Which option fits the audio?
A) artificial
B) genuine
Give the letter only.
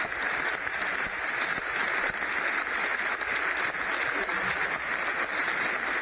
B